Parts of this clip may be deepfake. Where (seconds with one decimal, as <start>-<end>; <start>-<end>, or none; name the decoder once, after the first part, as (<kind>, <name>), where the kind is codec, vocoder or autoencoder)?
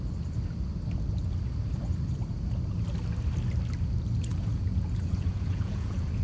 4.3-6.2 (vocoder, Vocos)